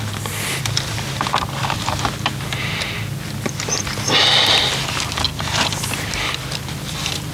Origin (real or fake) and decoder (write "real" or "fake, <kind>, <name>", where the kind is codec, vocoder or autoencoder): real